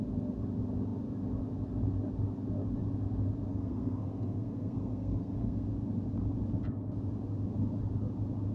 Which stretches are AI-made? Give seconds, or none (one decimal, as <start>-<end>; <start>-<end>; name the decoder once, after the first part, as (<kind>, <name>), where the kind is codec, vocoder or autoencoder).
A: 3.5-5.7 (codec, SNAC)